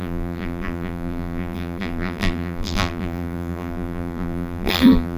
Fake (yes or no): yes